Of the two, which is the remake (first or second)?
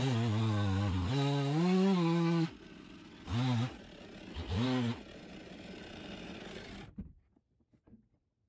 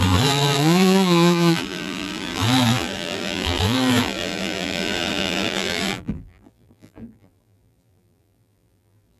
second